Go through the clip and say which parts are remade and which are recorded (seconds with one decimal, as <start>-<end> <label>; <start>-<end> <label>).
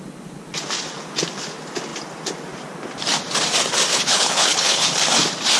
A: 0.0-3.9 recorded; 3.9-4.9 remade; 4.9-5.6 recorded